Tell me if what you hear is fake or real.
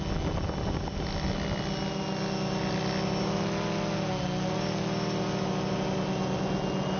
real